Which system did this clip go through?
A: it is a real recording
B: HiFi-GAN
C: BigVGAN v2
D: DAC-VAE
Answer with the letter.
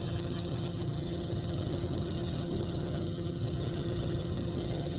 B